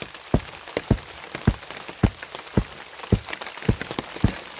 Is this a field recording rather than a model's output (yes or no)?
yes